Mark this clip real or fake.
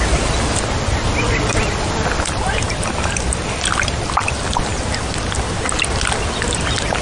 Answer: real